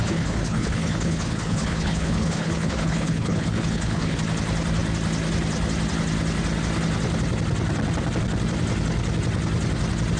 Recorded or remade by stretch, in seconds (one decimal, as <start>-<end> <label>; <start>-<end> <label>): 0.0-4.2 remade; 4.2-10.2 recorded